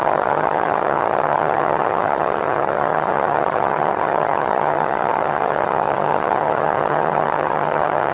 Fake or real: fake